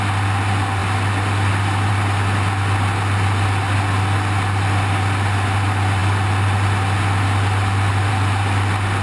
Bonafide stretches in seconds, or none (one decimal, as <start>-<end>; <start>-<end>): 0.0-9.0